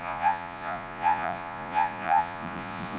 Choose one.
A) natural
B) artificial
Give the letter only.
B